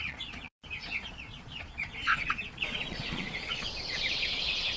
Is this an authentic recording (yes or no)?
no